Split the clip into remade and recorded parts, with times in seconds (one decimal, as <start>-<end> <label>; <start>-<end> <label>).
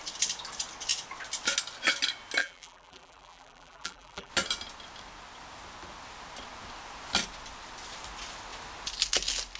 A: 0.0-2.4 recorded; 2.4-4.3 remade; 4.3-9.6 recorded